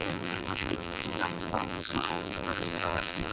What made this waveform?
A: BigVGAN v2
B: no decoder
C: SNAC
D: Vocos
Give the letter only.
A